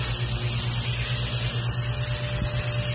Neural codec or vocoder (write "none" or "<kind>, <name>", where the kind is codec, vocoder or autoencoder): none